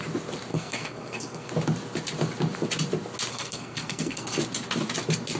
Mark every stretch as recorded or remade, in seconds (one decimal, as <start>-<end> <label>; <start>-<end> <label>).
0.0-0.5 recorded; 0.5-1.5 remade; 1.5-3.3 recorded; 3.3-4.4 remade; 4.4-5.4 recorded